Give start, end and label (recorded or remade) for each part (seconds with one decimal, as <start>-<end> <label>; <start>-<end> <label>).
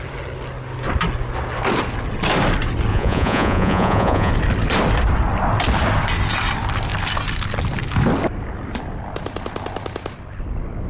0.0-2.9 recorded; 2.9-4.3 remade; 4.3-10.9 recorded